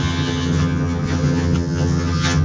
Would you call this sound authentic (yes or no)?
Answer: no